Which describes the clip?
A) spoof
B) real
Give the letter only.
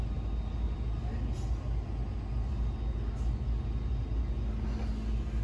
B